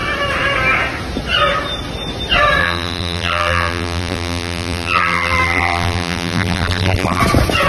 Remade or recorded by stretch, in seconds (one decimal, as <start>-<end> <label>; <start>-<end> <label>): 0.0-2.6 recorded; 2.6-7.2 remade; 7.2-7.7 recorded